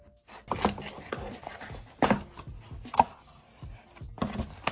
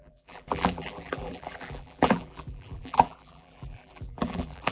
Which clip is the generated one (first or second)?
second